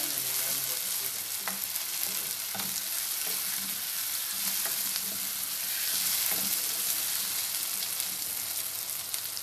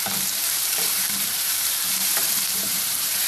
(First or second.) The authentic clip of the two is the first